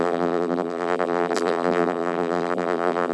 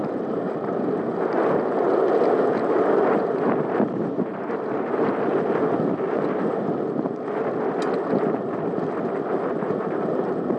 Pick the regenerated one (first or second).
first